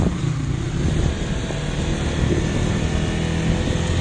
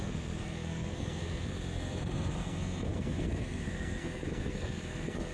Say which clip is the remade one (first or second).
second